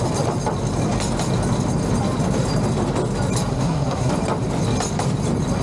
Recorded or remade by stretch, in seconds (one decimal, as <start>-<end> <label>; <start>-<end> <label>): 0.0-3.5 recorded; 3.5-4.1 remade; 4.1-5.6 recorded